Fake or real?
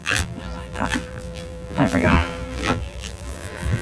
fake